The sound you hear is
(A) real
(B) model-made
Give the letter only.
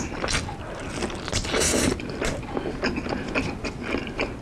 A